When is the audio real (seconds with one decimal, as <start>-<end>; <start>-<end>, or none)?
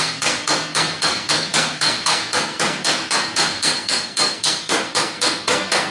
none